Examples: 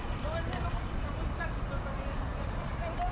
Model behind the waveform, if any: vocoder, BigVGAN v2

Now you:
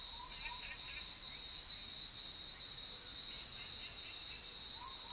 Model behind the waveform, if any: none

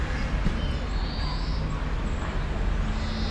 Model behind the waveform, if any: none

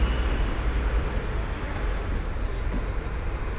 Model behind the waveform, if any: none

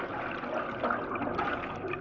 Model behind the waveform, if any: none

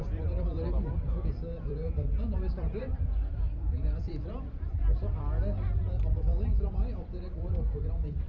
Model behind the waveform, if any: vocoder, BigVGAN v2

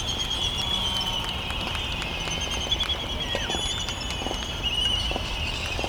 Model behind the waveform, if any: none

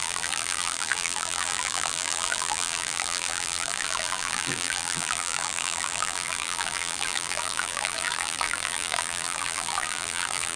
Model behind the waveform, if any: vocoder, BigVGAN v2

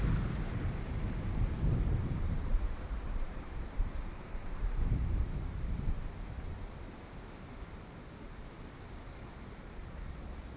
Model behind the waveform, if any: vocoder, BigVGAN v2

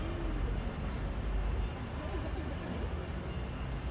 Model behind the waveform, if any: none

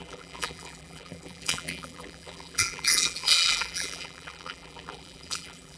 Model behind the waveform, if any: vocoder, BigVGAN v2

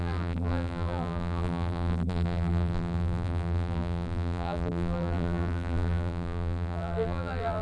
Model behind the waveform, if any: vocoder, BigVGAN v2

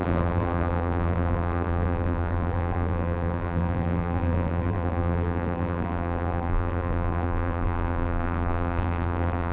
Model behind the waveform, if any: vocoder, BigVGAN v2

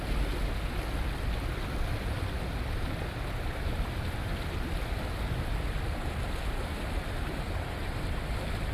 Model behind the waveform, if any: vocoder, BigVGAN v2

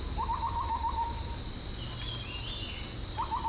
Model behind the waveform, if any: none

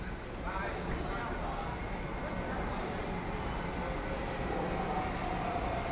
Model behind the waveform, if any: none